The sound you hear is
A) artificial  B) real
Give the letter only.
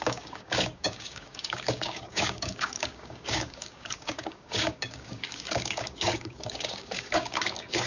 A